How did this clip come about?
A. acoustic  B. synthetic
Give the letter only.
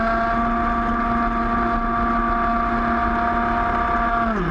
A